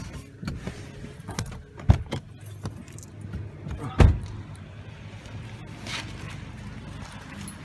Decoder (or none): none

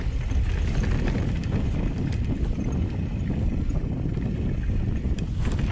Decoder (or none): none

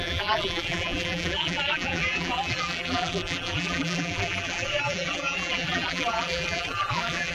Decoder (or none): vocoder, BigVGAN v2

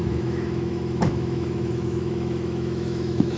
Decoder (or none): autoencoder, DAC-VAE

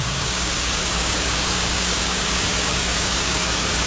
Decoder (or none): codec, DAC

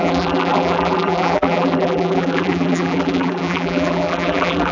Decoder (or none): vocoder, BigVGAN v2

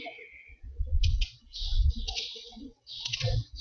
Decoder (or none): vocoder, WaveNeXt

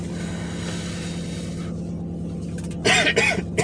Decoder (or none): none